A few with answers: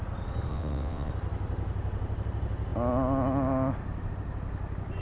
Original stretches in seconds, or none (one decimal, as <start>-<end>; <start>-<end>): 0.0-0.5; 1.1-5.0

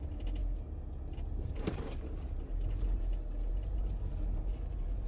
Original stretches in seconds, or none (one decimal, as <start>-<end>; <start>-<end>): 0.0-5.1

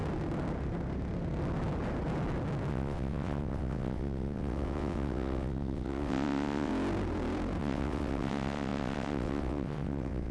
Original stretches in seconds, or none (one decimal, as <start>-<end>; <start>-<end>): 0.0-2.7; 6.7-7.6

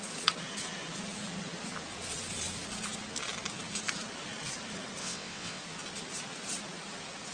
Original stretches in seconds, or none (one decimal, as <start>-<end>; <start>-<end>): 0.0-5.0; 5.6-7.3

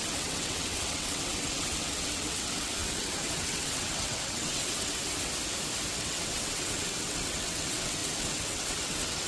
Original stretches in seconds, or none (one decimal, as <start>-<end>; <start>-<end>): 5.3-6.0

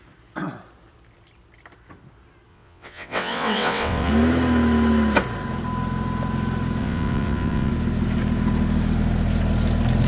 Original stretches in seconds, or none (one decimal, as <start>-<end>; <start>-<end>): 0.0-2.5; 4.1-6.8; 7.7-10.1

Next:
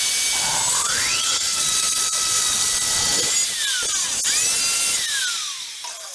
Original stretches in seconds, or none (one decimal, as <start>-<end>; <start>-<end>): 0.0-0.7; 3.2-6.1

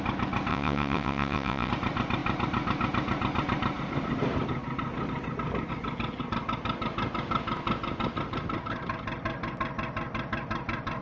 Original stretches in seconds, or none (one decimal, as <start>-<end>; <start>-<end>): 0.0-0.5; 1.7-11.0